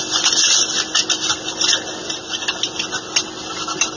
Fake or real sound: real